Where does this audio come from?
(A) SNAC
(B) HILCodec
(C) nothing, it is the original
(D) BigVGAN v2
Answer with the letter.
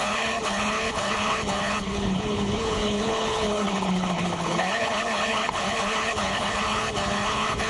B